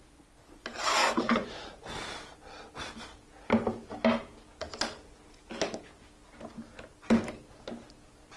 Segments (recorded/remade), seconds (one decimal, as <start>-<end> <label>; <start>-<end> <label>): 0.0-1.0 recorded; 1.0-1.7 remade; 1.7-8.4 recorded